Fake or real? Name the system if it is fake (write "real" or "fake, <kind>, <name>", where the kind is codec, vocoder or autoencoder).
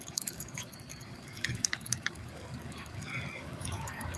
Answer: fake, codec, DAC